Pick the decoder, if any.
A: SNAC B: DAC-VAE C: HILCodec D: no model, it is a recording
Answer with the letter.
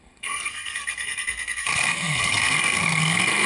A